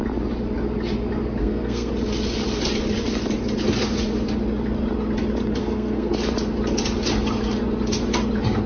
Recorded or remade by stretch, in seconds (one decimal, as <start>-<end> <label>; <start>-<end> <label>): 0.0-1.4 recorded; 1.4-1.9 remade; 1.9-5.6 recorded; 5.6-6.1 remade; 6.1-8.7 recorded